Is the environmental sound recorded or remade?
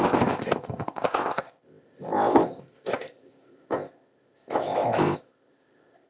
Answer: remade